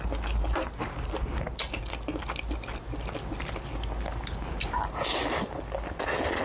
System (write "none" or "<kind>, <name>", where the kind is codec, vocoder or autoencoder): none